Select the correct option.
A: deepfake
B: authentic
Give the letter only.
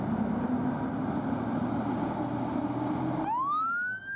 B